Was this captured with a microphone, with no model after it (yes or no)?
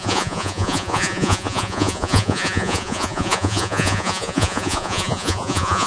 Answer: no